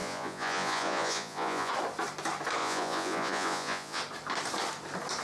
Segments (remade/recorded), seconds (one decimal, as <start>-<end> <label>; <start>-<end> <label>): 0.0-1.7 remade; 1.7-2.6 recorded; 2.6-4.0 remade; 4.0-5.2 recorded